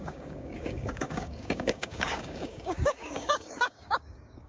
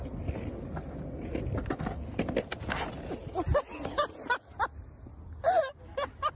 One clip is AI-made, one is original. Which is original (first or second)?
second